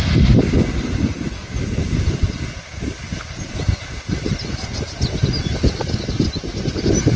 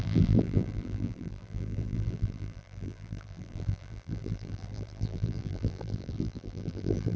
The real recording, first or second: first